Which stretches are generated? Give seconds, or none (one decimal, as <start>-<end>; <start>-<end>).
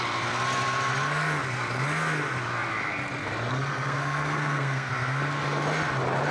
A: 3.5-4.9